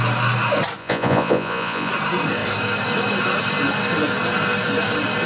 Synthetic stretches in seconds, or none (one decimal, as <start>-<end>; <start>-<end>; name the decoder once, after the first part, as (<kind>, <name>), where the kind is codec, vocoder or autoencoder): 0.8-1.9 (vocoder, Vocos)

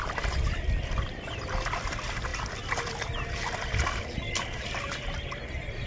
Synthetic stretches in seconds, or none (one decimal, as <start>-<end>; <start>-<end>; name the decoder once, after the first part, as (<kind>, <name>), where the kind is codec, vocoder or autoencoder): 0.0-0.8 (vocoder, BigVGAN v2)

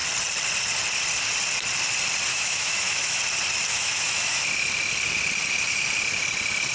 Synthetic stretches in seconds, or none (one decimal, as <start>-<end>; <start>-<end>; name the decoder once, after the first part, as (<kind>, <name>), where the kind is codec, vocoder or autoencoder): 2.3-3.2 (autoencoder, DAC-VAE); 3.7-4.4

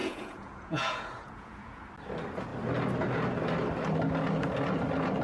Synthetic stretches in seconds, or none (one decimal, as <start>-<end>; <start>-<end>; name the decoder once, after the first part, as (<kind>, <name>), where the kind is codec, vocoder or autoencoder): 0.0-1.8 (vocoder, Vocos)

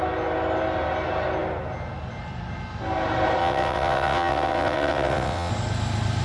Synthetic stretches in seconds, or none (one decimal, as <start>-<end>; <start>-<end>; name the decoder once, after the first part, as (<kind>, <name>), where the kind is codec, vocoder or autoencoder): 3.4-5.5 (vocoder, WaveNeXt)

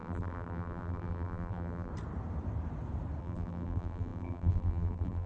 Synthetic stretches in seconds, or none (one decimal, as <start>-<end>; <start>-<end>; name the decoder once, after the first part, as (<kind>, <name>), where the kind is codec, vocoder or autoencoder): 0.0-1.9 (vocoder, BigVGAN v2); 3.2-5.3

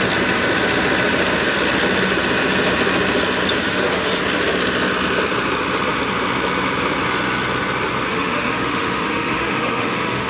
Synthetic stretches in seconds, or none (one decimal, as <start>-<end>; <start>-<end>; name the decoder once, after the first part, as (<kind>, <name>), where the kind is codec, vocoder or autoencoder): 3.6-4.2 (autoencoder, DAC-VAE); 8.1-10.3